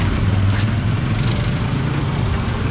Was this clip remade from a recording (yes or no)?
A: no